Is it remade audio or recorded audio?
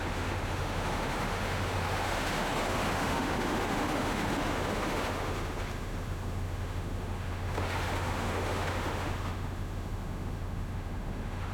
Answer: remade